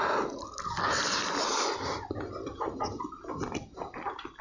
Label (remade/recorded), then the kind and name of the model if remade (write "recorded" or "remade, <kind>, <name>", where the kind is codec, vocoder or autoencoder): recorded